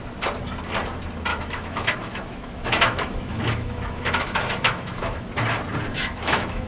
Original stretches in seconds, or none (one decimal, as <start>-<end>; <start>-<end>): 0.0-1.3; 5.3-5.9